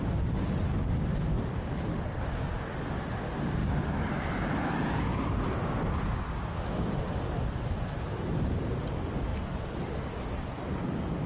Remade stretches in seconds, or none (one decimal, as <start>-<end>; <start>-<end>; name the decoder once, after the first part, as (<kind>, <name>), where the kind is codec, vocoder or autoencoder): 3.6-4.4 (vocoder, BigVGAN v2); 9.3-10.5